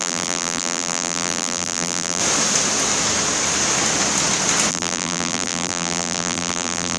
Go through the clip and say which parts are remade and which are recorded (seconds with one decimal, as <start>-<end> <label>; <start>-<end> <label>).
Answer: 0.0-2.2 remade; 2.2-4.7 recorded; 4.7-7.0 remade